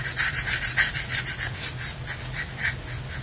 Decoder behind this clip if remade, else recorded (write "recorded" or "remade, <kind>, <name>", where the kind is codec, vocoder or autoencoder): recorded